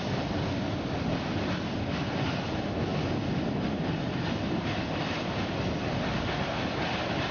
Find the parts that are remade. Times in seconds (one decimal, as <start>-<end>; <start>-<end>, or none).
none